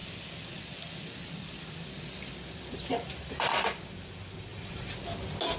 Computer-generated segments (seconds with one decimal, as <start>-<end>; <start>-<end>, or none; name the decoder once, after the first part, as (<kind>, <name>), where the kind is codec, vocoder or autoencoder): 2.9-4.9 (vocoder, BigVGAN v2)